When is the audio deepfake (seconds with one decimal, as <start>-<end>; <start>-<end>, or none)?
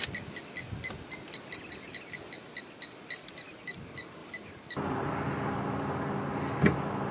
4.2-5.5